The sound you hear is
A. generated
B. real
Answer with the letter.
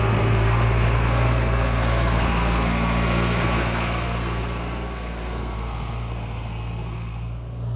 A